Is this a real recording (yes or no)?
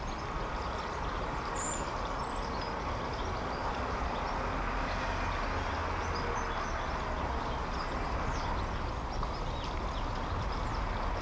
yes